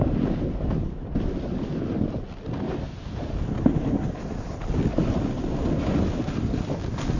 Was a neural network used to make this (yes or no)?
no